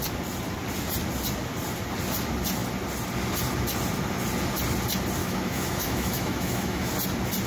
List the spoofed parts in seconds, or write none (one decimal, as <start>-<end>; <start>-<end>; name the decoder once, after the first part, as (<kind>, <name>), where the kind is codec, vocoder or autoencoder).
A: 5.2-6.9 (autoencoder, DAC-VAE)